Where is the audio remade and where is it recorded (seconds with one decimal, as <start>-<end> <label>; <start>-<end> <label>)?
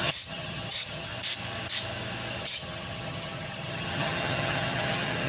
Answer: 0.0-1.1 remade; 1.1-2.4 recorded; 2.4-5.3 remade